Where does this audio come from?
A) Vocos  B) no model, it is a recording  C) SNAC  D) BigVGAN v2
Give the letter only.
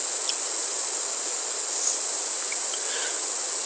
B